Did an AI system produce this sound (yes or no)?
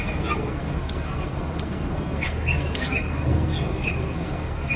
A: yes